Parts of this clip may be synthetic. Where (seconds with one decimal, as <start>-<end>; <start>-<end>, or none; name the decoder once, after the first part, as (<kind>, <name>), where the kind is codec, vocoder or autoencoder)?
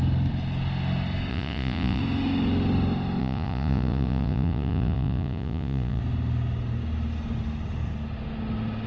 1.3-2.0 (vocoder, Vocos); 3.2-6.0